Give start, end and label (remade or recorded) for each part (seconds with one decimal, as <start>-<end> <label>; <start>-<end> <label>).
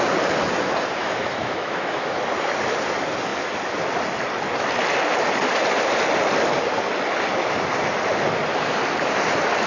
0.0-1.0 recorded; 1.0-2.2 remade; 2.2-9.7 recorded